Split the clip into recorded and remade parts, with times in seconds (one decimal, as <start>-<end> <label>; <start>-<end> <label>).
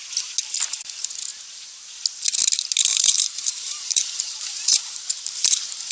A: 0.0-2.9 recorded; 2.9-4.8 remade; 4.8-5.9 recorded